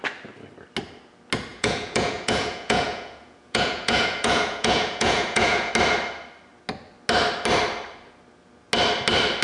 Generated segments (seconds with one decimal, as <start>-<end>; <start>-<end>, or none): 1.5-5.7